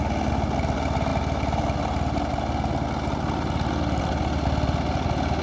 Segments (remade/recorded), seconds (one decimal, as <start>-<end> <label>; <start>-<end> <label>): 0.0-5.4 recorded